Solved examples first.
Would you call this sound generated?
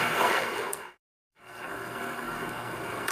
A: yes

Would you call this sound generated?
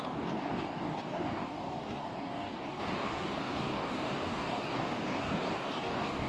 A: yes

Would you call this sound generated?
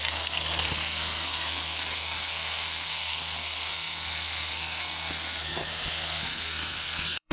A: yes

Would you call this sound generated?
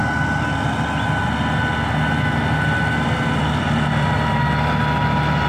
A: no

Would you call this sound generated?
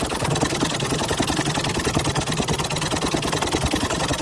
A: no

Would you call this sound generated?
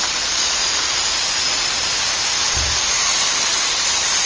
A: no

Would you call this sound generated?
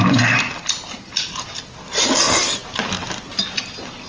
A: no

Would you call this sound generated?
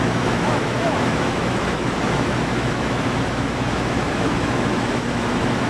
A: yes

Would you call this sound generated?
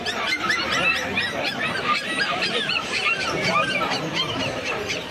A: yes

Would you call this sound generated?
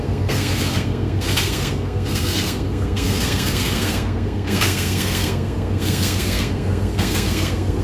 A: yes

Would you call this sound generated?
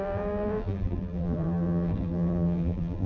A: yes